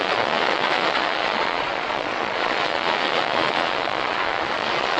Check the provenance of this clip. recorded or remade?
remade